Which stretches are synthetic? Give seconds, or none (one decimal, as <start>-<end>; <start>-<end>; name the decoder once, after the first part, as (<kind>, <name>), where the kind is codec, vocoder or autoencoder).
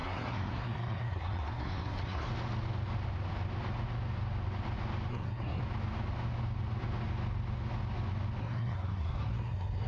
0.0-2.3 (codec, SNAC); 5.1-5.6; 8.4-9.9